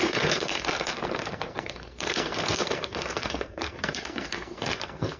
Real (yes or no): no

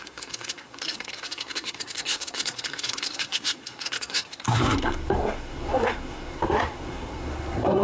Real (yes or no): no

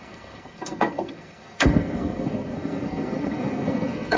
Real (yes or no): no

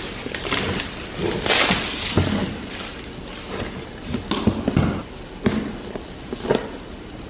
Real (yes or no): yes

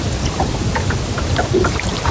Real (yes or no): yes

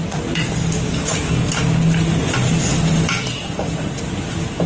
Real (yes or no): yes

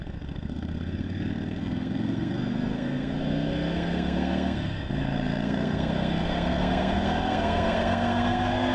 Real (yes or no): no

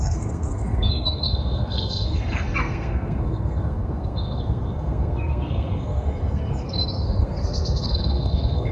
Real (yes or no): no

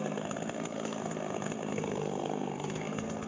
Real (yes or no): no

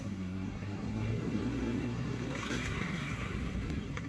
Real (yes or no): no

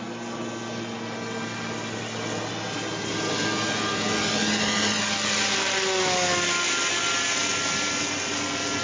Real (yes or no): yes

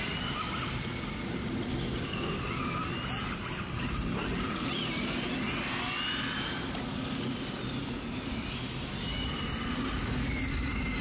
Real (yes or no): yes